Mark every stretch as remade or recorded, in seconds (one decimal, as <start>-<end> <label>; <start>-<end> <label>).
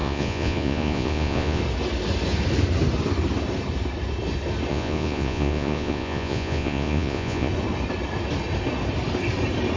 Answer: 0.0-1.6 remade; 1.6-4.7 recorded; 4.7-7.5 remade; 7.5-9.8 recorded